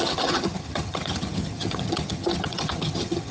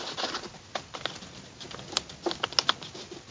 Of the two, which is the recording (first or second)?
second